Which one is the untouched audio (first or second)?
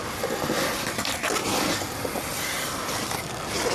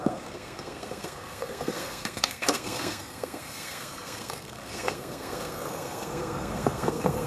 first